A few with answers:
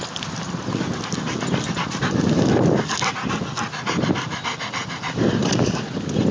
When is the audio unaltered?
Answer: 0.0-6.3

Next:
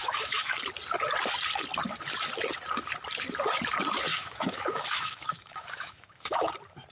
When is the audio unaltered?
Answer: 0.6-4.1; 6.5-6.9

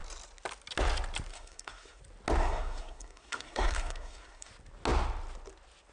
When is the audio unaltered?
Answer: 0.0-1.3; 2.0-2.4; 4.5-5.9

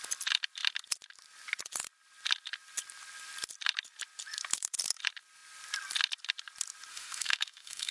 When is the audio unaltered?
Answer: 0.0-6.9

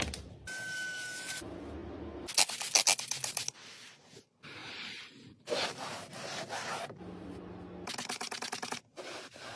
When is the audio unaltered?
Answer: 0.0-4.6; 6.1-9.6

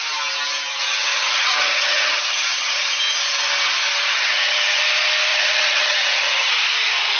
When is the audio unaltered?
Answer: 0.0-0.7; 3.0-4.1; 4.8-5.3; 6.5-7.2